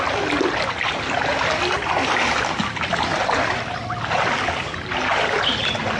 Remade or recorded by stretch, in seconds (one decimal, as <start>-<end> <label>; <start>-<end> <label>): 0.0-6.0 recorded